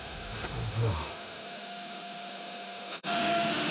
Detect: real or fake fake